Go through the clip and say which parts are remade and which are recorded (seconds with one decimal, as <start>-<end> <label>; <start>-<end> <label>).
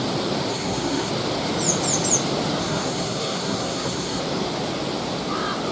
0.0-0.5 recorded; 0.5-1.1 remade; 1.1-2.6 recorded; 2.6-4.2 remade; 4.2-5.7 recorded